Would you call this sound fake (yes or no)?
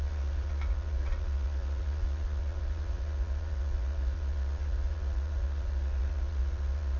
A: yes